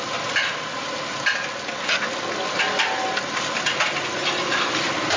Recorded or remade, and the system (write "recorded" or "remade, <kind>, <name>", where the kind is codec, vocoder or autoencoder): recorded